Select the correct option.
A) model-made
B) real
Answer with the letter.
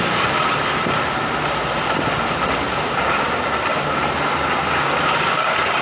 B